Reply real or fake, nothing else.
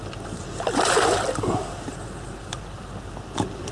real